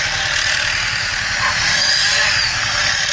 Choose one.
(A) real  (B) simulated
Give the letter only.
A